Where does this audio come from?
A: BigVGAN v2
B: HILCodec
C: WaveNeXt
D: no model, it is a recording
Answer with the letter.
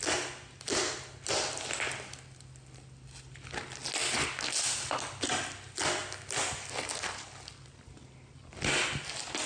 D